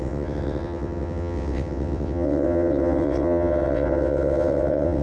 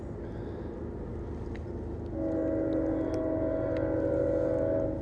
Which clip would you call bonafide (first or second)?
second